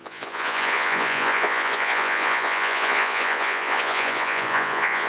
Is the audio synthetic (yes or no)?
yes